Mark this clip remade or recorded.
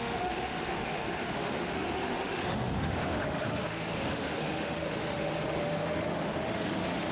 remade